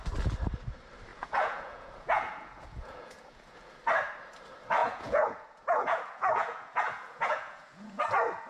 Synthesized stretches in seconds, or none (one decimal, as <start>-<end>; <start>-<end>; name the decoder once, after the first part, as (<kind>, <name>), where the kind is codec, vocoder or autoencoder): 1.1-3.7 (vocoder, Vocos); 4.8-8.0